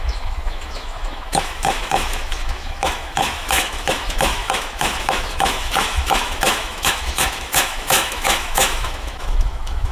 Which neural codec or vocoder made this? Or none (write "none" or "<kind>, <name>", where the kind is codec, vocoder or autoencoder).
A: autoencoder, DAC-VAE